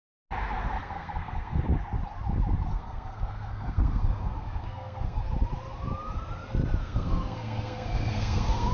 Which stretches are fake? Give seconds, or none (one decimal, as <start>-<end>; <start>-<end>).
0.8-1.6; 2.7-5.2; 6.8-8.7